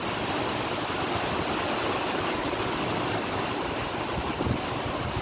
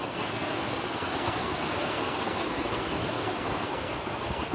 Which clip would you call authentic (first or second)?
first